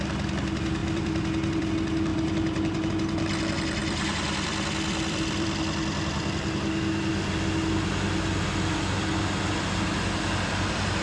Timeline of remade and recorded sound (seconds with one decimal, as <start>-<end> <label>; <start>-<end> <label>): 0.0-0.8 recorded; 0.8-1.7 remade; 1.7-2.1 recorded; 2.1-2.9 remade; 2.9-3.8 recorded; 3.8-5.6 remade; 5.6-11.0 recorded